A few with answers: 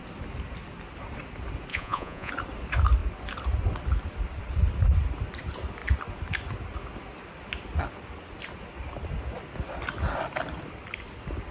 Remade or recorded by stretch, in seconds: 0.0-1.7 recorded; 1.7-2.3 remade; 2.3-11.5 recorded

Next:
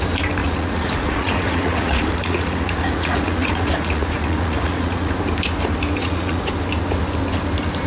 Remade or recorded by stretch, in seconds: 0.0-0.4 recorded; 0.4-5.1 remade; 5.1-6.0 recorded; 6.0-6.5 remade; 6.5-7.9 recorded

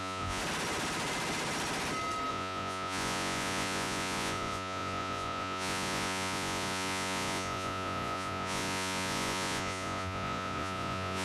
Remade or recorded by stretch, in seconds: 0.0-0.4 remade; 0.4-2.3 recorded; 2.3-11.2 remade